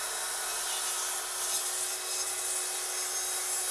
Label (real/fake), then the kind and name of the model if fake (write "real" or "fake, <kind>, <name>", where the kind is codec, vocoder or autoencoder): real